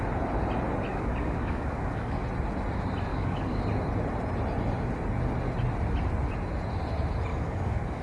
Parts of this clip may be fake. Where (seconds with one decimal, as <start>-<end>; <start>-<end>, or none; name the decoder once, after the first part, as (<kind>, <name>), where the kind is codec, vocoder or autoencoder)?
0.9-2.2 (codec, DAC); 3.1-3.6; 7.3-8.0